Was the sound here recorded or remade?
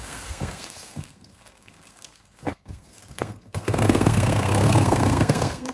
remade